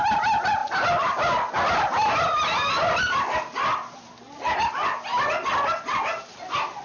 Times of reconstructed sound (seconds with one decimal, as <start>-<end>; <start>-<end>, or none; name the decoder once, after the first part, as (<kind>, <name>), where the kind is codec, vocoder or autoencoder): none